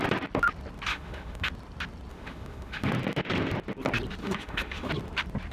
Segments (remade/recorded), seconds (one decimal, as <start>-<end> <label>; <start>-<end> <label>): 0.0-0.9 recorded; 0.9-1.5 remade; 1.5-2.1 recorded; 2.1-2.9 remade; 2.9-4.2 recorded; 4.2-4.9 remade; 4.9-5.5 recorded